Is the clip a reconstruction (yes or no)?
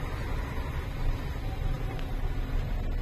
no